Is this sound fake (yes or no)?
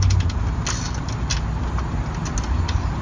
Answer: no